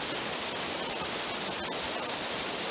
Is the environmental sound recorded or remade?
recorded